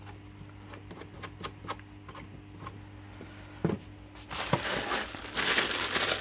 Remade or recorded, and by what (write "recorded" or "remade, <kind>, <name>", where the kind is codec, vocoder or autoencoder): recorded